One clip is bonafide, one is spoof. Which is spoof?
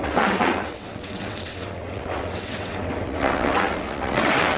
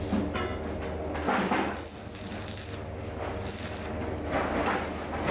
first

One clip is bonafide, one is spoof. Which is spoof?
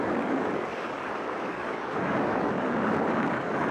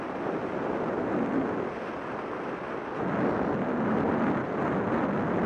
first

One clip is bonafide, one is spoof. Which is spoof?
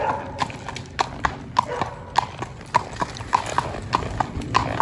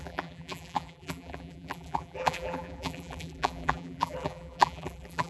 second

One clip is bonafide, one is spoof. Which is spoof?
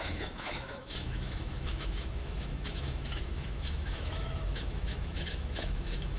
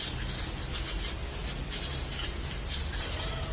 first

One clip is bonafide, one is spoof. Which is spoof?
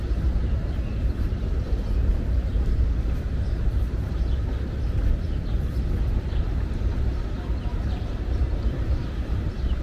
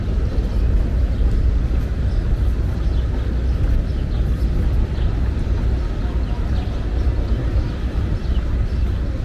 first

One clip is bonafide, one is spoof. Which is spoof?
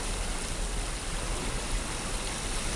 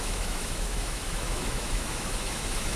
second